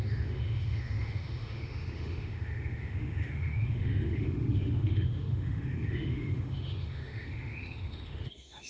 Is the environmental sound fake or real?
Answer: fake